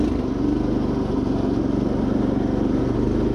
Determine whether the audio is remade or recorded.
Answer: recorded